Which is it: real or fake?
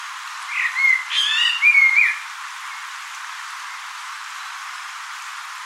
real